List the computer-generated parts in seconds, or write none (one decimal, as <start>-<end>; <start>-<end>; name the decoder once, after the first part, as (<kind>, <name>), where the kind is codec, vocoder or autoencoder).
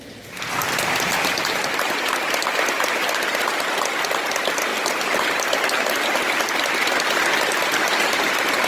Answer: none